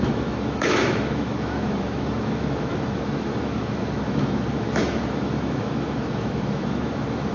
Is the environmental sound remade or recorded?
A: remade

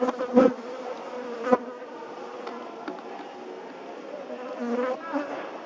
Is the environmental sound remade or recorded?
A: recorded